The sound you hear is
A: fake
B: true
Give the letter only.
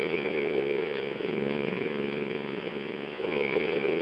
A